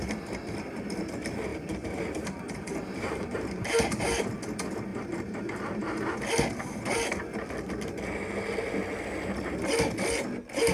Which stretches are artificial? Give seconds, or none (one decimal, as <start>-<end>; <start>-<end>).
1.5-4.0; 4.9-5.8